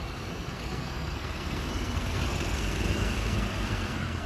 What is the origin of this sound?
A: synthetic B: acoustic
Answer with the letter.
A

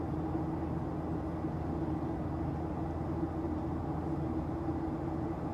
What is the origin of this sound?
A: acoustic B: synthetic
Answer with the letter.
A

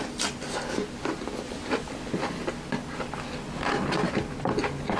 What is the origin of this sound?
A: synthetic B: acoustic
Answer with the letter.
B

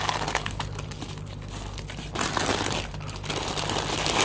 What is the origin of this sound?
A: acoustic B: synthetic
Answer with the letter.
A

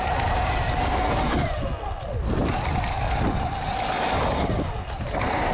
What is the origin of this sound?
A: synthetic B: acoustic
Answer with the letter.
B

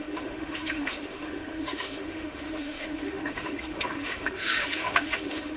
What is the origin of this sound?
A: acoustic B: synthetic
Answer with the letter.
B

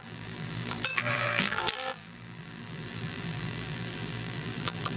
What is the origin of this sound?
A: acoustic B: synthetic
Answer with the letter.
B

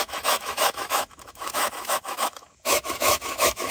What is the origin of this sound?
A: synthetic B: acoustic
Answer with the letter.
A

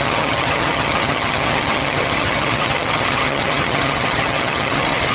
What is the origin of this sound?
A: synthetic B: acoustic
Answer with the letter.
A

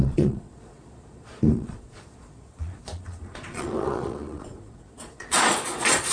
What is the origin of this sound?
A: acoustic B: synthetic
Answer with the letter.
B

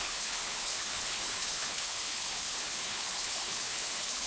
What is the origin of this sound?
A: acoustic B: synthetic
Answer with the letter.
B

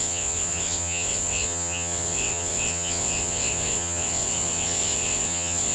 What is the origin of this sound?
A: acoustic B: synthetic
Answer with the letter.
B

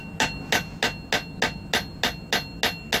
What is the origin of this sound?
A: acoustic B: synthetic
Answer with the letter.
A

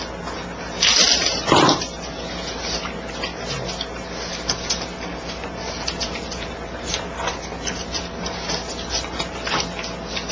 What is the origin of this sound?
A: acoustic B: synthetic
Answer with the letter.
A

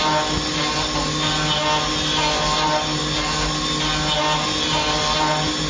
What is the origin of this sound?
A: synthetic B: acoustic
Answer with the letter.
B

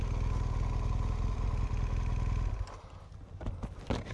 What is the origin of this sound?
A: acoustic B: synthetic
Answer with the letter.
A